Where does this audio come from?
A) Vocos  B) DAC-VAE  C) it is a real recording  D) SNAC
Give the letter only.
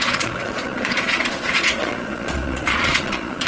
A